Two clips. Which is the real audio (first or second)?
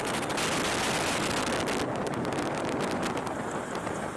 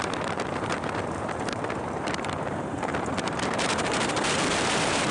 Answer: first